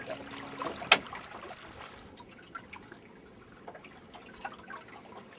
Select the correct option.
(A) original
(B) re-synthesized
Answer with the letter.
A